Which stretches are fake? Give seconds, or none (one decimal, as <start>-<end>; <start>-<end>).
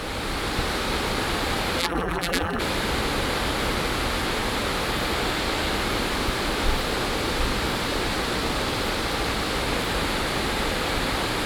1.8-2.6